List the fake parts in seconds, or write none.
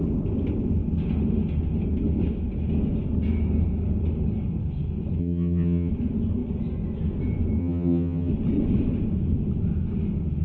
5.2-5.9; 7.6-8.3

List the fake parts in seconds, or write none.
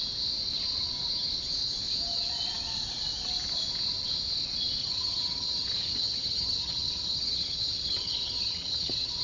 4.8-9.2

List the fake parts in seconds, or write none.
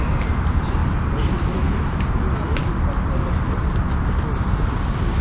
none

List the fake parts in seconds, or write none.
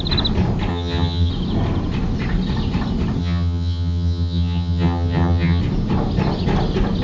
0.7-1.3; 3.2-5.6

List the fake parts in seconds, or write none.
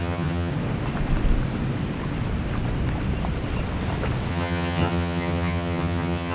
0.0-0.5; 4.3-6.3